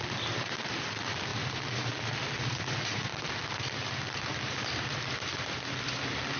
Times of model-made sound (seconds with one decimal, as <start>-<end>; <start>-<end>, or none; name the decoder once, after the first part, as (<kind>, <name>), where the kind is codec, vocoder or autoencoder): 0.0-1.3 (vocoder, BigVGAN v2); 2.6-6.4